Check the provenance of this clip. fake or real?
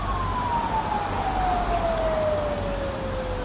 real